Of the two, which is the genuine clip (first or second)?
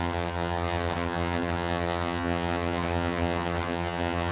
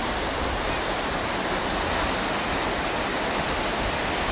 second